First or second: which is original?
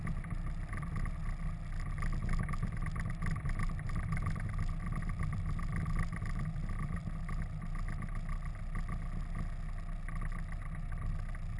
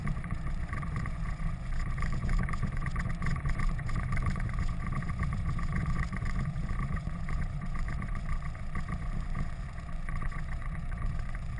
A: first